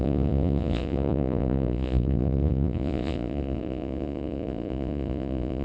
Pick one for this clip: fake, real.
fake